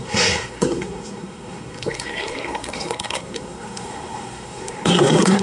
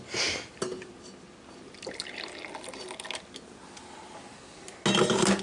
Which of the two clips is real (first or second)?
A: second